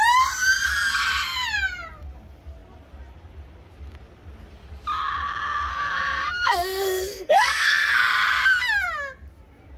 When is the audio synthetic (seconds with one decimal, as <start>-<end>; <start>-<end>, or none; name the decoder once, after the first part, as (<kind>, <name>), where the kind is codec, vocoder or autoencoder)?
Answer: 5.7-7.9 (codec, SNAC)